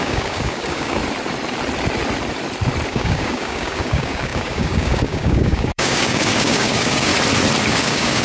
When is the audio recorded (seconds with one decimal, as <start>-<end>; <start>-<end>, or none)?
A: 1.0-2.9; 7.1-7.7